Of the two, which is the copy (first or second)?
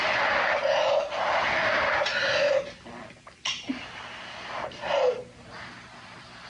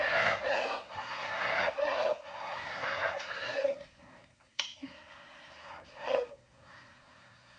second